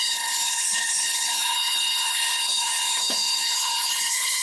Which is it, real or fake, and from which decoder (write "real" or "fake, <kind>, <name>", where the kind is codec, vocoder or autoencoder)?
fake, codec, HILCodec